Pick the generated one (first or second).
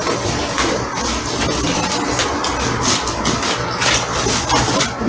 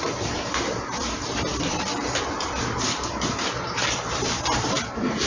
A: second